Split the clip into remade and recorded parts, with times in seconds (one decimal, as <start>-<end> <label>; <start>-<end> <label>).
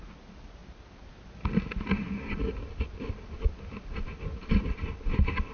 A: 0.0-5.5 recorded